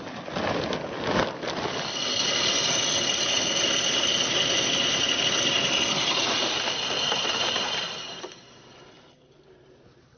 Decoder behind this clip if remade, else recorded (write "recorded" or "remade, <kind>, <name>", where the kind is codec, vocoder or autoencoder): recorded